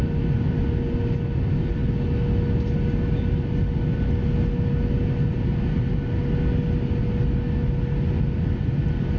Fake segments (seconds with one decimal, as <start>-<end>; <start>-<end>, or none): none